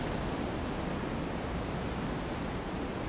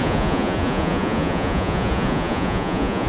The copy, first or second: second